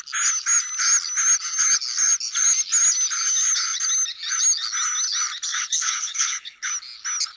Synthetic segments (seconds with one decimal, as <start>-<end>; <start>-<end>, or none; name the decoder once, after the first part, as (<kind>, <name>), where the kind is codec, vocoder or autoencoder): 5.5-6.7 (codec, HILCodec)